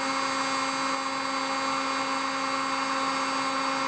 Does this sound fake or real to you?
real